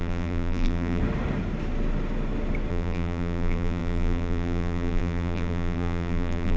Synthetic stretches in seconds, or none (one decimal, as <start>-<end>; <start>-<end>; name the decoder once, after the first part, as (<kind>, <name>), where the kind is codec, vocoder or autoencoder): 0.0-1.0 (vocoder, BigVGAN v2); 2.7-6.6